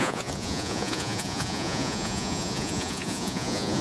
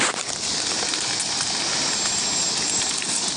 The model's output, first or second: first